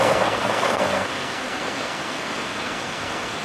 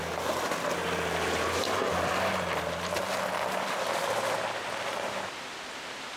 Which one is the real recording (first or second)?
second